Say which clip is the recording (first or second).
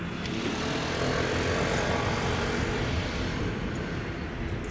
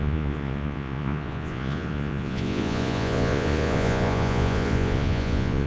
first